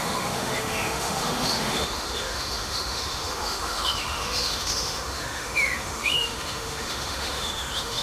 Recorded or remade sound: remade